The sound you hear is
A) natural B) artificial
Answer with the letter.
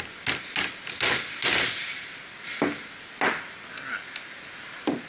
A